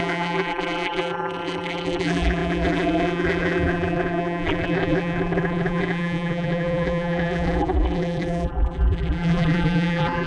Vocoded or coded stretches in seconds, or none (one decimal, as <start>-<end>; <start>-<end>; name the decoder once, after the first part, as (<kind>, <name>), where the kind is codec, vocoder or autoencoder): 0.0-10.3 (vocoder, BigVGAN v2)

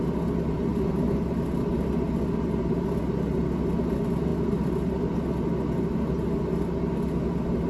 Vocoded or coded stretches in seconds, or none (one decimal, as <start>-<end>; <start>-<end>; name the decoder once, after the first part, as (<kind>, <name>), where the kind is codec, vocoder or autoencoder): none

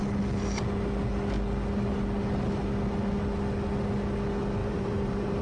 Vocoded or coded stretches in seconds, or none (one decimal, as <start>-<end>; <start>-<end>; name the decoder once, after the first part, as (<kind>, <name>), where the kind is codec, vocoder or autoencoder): 4.6-5.4 (vocoder, BigVGAN v2)

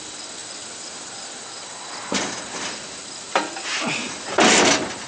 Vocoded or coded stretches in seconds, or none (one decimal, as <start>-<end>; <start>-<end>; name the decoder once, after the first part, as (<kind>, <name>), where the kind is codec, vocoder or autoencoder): none

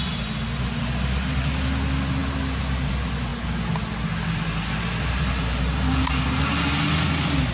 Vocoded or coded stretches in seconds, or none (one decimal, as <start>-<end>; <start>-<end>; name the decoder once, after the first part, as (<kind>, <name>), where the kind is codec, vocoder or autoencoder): none